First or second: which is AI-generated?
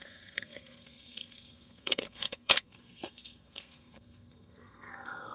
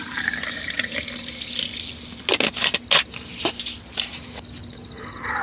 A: first